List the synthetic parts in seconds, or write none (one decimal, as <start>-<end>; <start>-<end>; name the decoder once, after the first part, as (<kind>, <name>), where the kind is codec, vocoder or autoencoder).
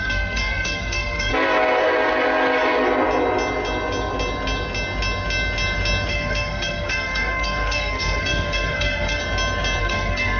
0.0-1.3 (codec, SNAC); 6.1-9.2; 9.8-10.4